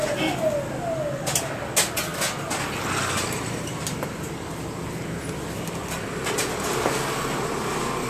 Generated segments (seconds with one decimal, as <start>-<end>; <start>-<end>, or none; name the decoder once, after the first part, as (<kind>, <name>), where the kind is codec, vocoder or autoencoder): none